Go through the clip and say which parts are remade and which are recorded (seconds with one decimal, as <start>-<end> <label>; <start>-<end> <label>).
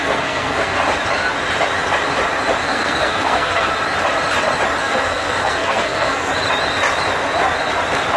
0.0-0.8 remade; 0.8-2.6 recorded; 2.6-3.7 remade; 3.7-4.8 recorded; 4.8-6.3 remade; 6.3-8.2 recorded